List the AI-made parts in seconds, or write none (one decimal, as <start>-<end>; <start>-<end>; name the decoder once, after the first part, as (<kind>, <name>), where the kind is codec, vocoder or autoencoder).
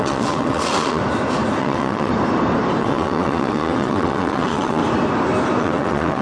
0.0-1.0 (vocoder, WaveNeXt); 1.6-2.1; 2.8-4.8; 5.6-6.2